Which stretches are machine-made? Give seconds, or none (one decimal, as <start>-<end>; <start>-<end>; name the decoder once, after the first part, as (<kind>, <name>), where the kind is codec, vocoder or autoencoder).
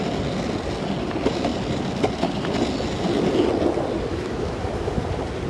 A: 4.1-4.9 (autoencoder, DAC-VAE)